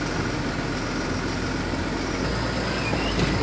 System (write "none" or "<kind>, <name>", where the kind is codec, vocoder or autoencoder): none